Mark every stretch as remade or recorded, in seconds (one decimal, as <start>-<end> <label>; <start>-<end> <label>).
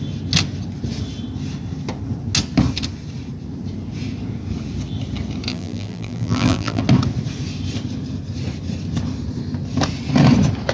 0.0-5.5 recorded; 5.5-6.8 remade; 6.8-10.7 recorded